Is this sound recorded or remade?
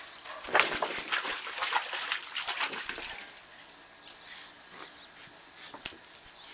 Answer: recorded